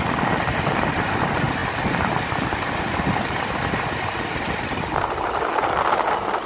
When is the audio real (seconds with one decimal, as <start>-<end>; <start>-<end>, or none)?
0.0-6.5